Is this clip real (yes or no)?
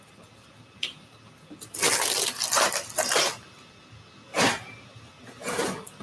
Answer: yes